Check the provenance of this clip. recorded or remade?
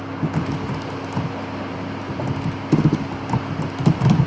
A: recorded